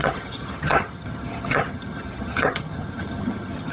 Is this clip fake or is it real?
fake